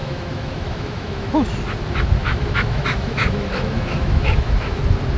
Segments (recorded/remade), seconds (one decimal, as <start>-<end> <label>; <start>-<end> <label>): 0.0-1.3 remade; 1.3-2.2 recorded; 2.2-4.8 remade; 4.8-5.2 recorded